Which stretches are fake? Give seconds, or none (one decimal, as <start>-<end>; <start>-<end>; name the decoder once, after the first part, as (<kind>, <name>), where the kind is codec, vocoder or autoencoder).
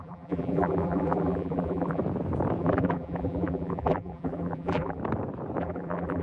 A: 0.0-2.0 (vocoder, BigVGAN v2); 2.6-5.0; 5.6-6.2